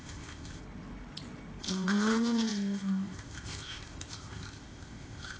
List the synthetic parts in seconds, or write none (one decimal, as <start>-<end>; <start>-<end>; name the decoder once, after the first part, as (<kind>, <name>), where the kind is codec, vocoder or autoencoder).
0.0-0.6 (codec, ZipCodec); 1.6-5.4